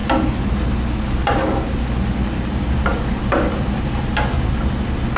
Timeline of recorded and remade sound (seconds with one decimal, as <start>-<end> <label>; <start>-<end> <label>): 0.0-2.9 recorded; 2.9-4.5 remade; 4.5-5.2 recorded